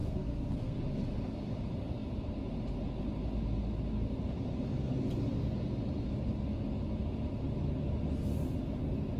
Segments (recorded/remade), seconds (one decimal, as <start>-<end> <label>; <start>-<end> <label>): 0.0-0.8 remade; 0.8-9.2 recorded